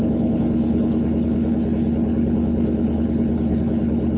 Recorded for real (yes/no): no